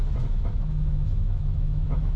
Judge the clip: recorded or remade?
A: remade